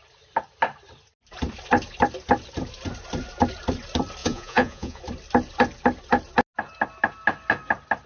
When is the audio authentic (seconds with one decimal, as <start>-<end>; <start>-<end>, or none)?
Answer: 0.0-4.2; 5.0-8.1